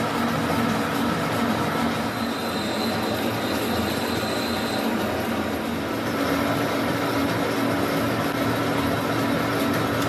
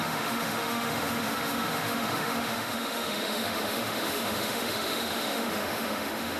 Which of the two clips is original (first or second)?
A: first